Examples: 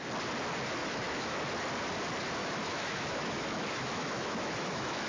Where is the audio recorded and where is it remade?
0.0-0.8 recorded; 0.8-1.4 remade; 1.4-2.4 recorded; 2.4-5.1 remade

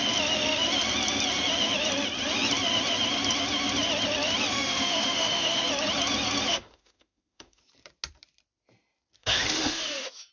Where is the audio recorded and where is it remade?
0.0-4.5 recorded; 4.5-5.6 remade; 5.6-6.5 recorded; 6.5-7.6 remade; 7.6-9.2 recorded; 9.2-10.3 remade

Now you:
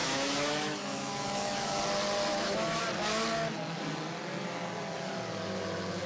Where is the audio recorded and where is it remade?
0.0-1.8 remade; 1.8-2.3 recorded; 2.3-2.8 remade; 2.8-6.1 recorded

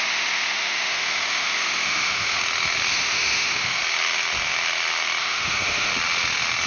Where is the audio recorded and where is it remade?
0.0-2.4 remade; 2.4-2.9 recorded; 2.9-3.8 remade; 3.8-5.2 recorded; 5.2-5.9 remade; 5.9-6.7 recorded

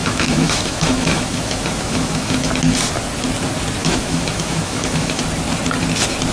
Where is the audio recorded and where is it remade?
0.0-2.5 remade; 2.5-3.8 recorded; 3.8-5.2 remade; 5.2-6.3 recorded